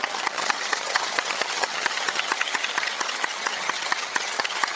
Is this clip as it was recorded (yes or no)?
no